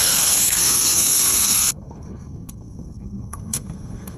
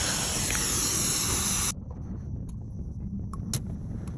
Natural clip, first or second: second